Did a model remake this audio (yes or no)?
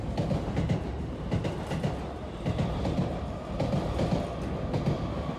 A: no